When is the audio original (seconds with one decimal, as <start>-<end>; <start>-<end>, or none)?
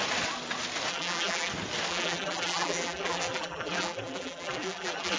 0.0-0.9; 1.5-1.9